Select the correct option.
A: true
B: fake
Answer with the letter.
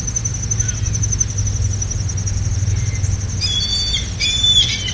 A